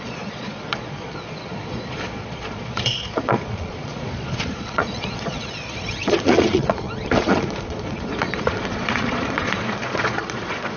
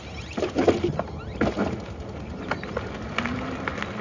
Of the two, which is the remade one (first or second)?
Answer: first